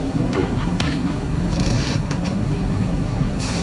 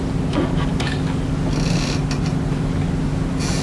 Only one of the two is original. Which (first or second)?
second